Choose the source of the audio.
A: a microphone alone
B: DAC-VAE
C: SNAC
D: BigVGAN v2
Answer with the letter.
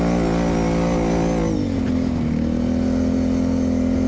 A